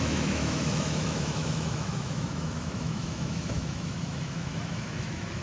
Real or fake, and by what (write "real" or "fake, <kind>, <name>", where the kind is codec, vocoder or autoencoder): fake, autoencoder, DAC-VAE